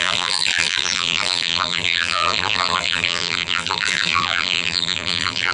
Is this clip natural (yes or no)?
no